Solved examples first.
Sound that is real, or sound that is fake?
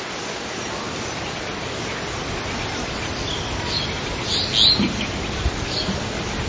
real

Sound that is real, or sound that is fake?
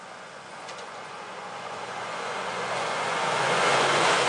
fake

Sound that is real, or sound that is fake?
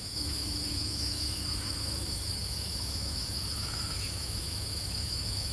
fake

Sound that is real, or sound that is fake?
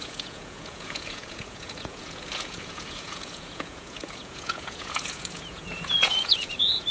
fake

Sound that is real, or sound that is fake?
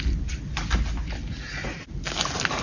real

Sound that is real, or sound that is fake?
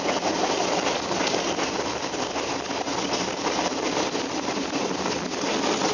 real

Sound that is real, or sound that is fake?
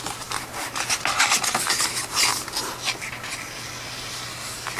real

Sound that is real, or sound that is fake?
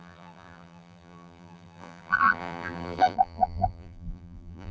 fake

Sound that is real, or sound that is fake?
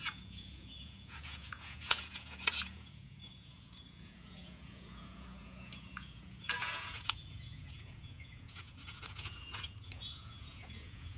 fake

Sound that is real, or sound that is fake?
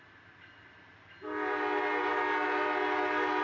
real